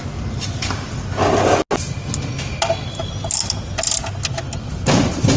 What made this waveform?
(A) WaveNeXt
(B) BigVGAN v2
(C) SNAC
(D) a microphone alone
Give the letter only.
D